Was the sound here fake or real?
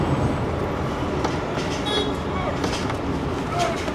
real